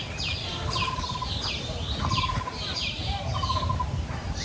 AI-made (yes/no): no